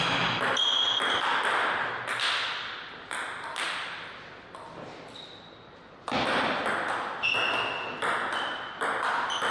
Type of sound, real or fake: real